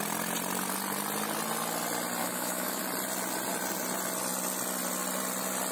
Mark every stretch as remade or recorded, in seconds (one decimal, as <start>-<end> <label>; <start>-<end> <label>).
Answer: 0.0-2.2 recorded; 2.2-2.8 remade; 2.8-5.7 recorded